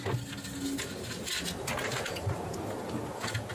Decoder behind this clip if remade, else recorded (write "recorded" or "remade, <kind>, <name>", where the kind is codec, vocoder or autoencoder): recorded